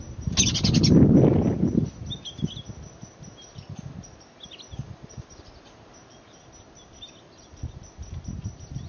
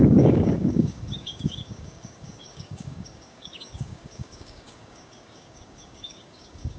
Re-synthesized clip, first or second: second